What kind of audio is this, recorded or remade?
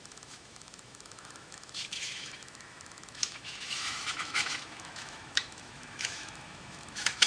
remade